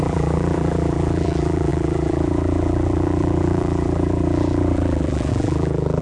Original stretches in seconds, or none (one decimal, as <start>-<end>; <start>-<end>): none